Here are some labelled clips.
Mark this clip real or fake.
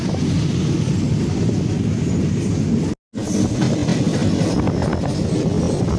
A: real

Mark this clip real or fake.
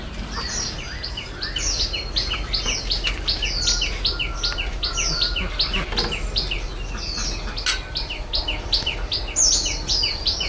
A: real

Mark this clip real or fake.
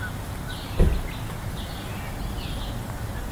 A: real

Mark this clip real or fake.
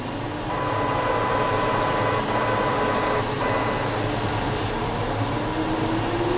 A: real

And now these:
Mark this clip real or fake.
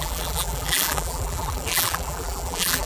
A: fake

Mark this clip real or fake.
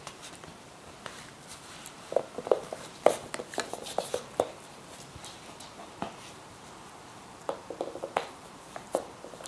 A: fake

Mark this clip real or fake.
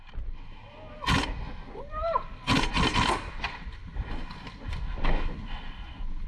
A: real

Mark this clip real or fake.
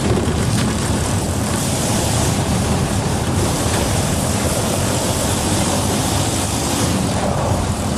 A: fake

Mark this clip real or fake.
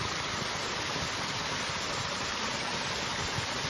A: real